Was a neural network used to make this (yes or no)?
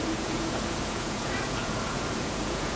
yes